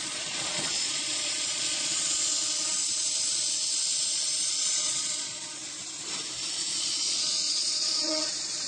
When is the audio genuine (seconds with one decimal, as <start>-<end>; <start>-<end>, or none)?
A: 2.3-4.5; 5.6-6.5